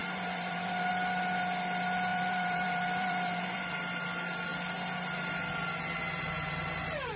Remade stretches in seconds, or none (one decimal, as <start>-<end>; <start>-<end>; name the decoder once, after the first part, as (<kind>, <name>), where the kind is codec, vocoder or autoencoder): 0.0-0.9 (vocoder, BigVGAN v2); 2.1-3.7